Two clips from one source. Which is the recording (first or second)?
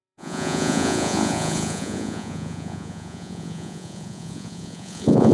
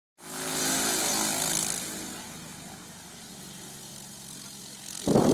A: second